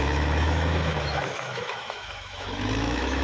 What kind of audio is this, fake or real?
fake